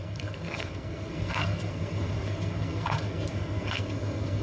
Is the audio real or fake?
fake